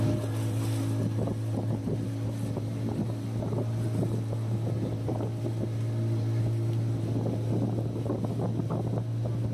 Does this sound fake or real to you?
real